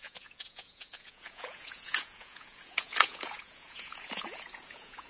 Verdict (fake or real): fake